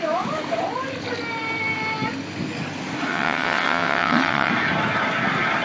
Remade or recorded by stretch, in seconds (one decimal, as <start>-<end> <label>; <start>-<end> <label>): 0.0-3.1 recorded; 3.1-4.5 remade; 4.5-5.6 recorded